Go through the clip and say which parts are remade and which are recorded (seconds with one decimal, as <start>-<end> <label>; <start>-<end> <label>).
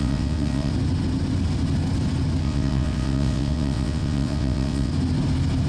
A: 0.0-0.7 remade; 0.7-2.4 recorded; 2.4-4.9 remade; 4.9-5.7 recorded